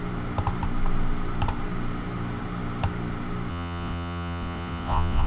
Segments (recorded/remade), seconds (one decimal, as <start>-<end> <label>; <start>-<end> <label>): 0.0-3.5 recorded; 3.5-5.3 remade